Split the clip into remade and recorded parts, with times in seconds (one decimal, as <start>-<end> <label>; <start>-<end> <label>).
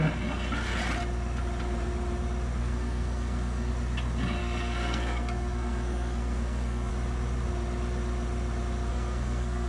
0.0-2.6 recorded; 2.6-3.7 remade; 3.7-4.4 recorded; 4.4-6.9 remade; 6.9-8.9 recorded; 8.9-9.7 remade